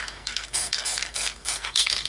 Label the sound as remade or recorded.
remade